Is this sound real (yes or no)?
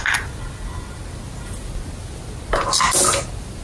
yes